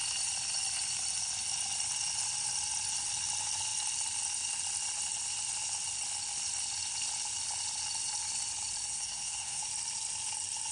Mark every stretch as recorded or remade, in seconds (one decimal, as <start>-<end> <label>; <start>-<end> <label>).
0.0-8.9 recorded; 8.9-9.6 remade; 9.6-10.7 recorded